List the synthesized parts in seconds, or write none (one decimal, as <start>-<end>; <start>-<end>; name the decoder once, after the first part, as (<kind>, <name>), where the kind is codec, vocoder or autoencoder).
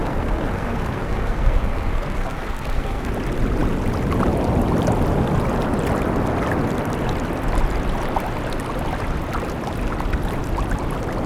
0.0-3.1 (codec, SNAC)